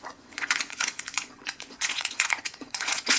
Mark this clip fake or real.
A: fake